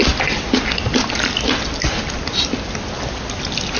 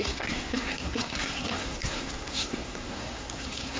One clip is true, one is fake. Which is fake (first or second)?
second